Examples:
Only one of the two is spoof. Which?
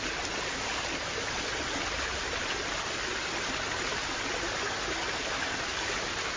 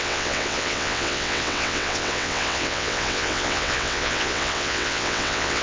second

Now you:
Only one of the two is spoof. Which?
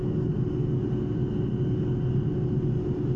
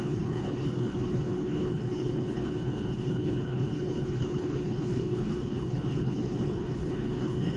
second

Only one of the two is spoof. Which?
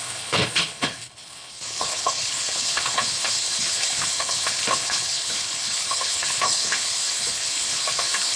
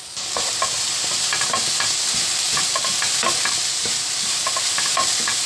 first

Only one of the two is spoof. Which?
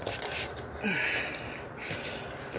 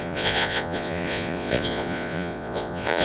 second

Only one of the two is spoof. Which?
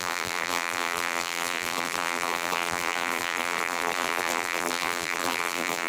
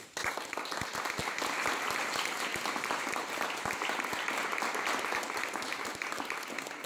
first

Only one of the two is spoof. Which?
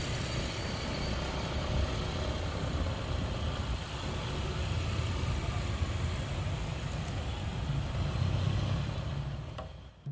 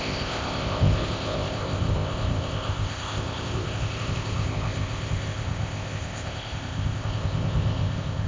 second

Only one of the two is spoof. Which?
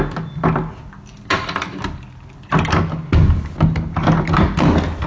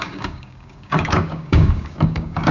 second